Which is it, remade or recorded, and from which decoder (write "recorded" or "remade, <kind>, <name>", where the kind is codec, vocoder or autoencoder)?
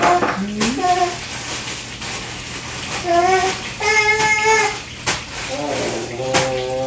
recorded